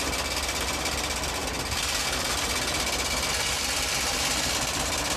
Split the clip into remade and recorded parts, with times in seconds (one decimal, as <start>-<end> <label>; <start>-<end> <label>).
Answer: 0.0-5.2 recorded